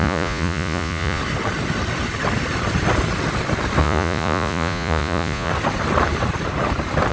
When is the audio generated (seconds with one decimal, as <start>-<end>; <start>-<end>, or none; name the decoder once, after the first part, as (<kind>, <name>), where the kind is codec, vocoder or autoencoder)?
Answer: 0.0-1.2 (vocoder, Vocos); 3.8-5.5